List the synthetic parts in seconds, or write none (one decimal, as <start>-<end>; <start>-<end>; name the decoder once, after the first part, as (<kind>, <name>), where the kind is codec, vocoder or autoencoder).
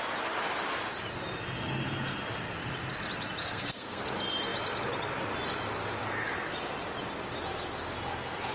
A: 3.4-4.0 (codec, SNAC)